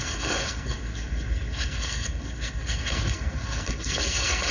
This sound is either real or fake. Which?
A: fake